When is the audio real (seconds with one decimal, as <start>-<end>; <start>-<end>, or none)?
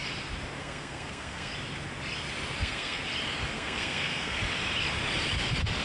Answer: 0.0-0.6; 1.5-2.6; 3.0-3.5; 4.4-5.8